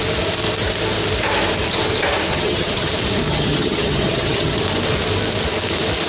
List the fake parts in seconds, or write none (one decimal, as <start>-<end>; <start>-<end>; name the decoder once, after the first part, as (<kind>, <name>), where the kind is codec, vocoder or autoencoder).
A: 2.3-2.9 (vocoder, HiFi-GAN); 3.3-4.6